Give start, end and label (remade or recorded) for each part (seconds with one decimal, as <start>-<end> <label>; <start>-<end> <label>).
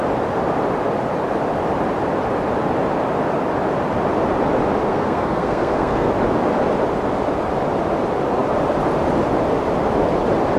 0.0-4.9 recorded; 4.9-6.1 remade; 6.1-10.6 recorded